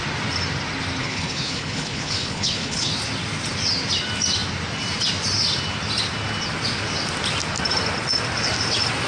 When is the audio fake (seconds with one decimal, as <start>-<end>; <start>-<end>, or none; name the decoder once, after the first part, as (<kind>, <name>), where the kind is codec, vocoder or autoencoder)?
1.0-2.9 (codec, HILCodec)